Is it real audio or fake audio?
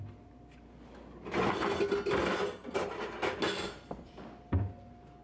real